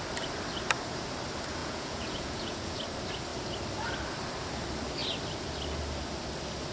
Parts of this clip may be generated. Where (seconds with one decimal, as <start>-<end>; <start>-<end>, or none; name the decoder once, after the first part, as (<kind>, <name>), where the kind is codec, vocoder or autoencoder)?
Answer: 1.6-2.8 (vocoder, Vocos)